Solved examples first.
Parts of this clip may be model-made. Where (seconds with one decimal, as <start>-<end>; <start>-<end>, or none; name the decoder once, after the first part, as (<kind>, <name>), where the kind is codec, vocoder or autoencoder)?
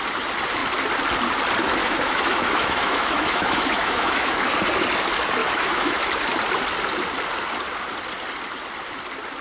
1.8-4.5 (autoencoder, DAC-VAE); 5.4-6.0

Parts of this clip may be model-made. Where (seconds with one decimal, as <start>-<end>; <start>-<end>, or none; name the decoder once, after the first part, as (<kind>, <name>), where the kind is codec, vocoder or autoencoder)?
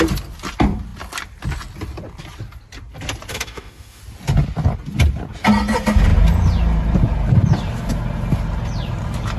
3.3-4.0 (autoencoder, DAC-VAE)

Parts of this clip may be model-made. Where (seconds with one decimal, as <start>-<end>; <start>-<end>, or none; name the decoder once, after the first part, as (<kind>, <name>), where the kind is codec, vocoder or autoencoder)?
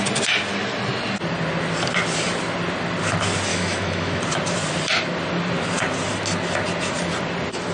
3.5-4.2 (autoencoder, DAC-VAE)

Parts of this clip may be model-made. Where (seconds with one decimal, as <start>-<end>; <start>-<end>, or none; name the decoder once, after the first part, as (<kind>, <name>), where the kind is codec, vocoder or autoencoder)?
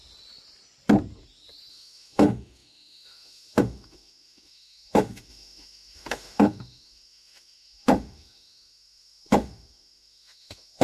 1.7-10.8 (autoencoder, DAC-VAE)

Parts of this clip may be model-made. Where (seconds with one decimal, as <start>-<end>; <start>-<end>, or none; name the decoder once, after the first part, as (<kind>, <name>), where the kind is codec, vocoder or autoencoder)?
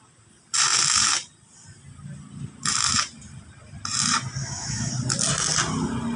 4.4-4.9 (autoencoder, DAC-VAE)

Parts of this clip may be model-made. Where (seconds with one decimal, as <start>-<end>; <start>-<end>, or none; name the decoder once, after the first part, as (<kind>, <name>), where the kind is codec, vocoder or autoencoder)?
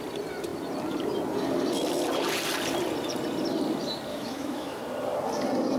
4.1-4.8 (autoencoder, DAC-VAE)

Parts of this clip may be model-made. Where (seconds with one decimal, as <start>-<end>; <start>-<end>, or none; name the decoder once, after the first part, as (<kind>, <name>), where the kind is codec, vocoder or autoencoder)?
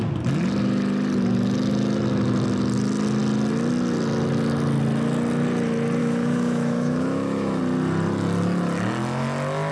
6.0-7.6 (autoencoder, DAC-VAE)